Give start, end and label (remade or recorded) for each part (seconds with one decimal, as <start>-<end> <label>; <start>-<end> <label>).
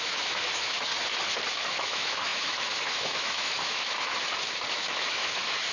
0.0-0.9 remade; 0.9-1.5 recorded; 1.5-4.1 remade; 4.1-4.7 recorded; 4.7-5.7 remade